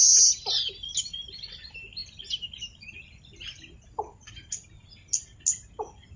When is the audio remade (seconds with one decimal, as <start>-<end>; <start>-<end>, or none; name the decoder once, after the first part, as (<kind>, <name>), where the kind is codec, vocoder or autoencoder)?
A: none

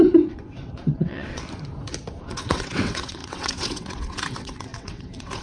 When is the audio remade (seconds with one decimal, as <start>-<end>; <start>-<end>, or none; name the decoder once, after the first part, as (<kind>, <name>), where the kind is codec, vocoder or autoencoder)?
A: 0.0-1.4 (vocoder, WaveNeXt); 2.2-5.4

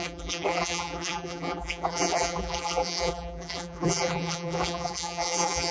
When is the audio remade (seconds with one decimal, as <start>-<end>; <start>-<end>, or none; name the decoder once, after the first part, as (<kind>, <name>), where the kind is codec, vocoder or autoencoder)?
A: 0.0-5.7 (vocoder, BigVGAN v2)

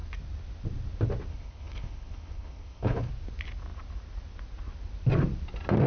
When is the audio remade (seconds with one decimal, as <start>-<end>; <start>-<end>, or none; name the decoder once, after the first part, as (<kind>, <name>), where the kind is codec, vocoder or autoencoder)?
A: 1.3-3.1 (codec, HILCodec)

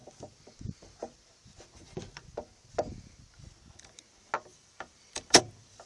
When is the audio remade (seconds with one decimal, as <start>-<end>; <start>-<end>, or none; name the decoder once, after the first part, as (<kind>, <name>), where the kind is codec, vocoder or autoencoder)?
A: 4.5-5.4 (vocoder, BigVGAN v2)